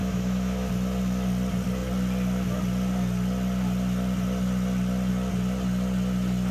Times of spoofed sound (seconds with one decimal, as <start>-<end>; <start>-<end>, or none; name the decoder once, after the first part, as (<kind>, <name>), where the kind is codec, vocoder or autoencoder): 0.0-0.7 (autoencoder, DAC-VAE)